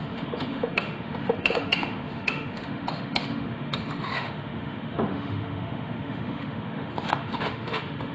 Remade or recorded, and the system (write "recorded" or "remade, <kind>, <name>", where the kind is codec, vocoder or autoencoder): remade, autoencoder, DAC-VAE